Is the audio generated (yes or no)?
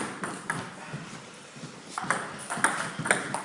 no